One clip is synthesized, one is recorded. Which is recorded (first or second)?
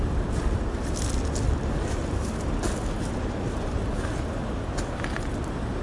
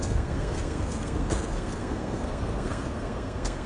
first